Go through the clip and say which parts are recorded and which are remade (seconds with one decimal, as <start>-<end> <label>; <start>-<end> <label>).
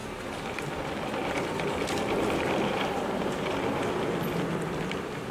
0.0-1.2 recorded; 1.2-3.8 remade; 3.8-5.3 recorded